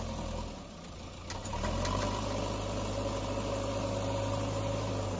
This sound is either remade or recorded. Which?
recorded